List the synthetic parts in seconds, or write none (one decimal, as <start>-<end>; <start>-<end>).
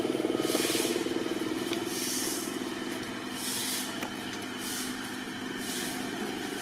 none